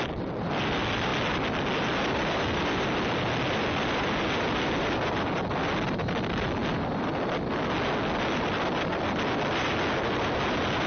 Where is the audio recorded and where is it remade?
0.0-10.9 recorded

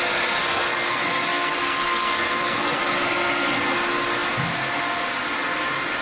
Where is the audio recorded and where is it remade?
0.0-0.4 recorded; 0.4-2.8 remade; 2.8-6.0 recorded

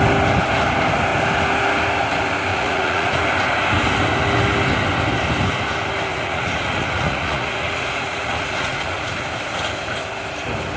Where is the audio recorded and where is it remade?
0.0-2.5 recorded; 2.5-3.2 remade; 3.2-6.1 recorded; 6.1-9.3 remade; 9.3-10.8 recorded

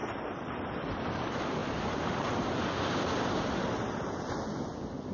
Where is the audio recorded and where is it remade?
0.0-5.1 recorded

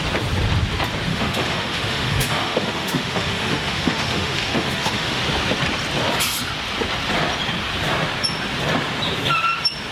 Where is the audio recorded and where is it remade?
0.0-1.1 recorded; 1.1-5.2 remade; 5.2-9.9 recorded